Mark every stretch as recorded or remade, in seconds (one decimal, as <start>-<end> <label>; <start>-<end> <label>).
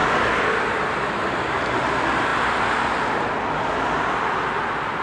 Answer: 0.0-5.0 recorded